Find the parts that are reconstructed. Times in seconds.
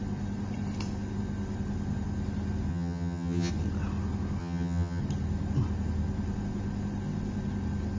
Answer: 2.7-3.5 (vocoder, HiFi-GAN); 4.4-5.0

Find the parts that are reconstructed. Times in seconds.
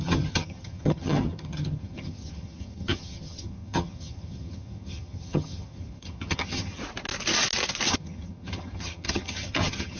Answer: 0.0-6.8 (vocoder, HiFi-GAN); 7.9-10.0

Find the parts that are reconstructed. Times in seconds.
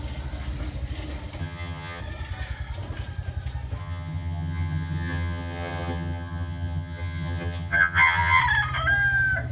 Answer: 1.4-2.0 (vocoder, HiFi-GAN); 3.8-8.4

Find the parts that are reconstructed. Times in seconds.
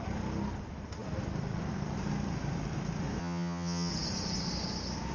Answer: 3.2-3.9 (vocoder, HiFi-GAN)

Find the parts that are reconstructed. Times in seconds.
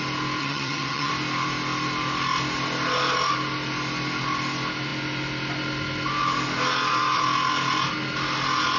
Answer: 0.4-1.1 (vocoder, HiFi-GAN)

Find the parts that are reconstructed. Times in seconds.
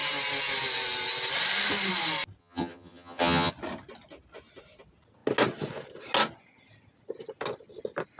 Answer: 2.4-3.5 (vocoder, HiFi-GAN)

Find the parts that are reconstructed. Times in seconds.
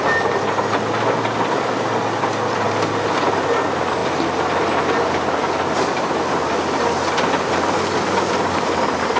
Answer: none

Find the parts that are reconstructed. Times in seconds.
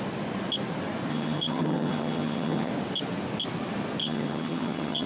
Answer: 1.1-2.7 (vocoder, HiFi-GAN); 4.0-5.1